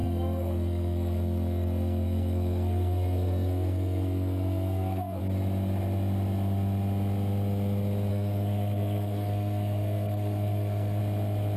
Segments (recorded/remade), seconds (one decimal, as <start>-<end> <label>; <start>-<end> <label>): 0.0-5.2 remade; 5.2-8.1 recorded; 8.1-11.0 remade; 11.0-11.6 recorded